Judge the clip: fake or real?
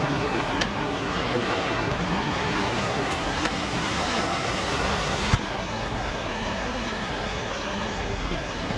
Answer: fake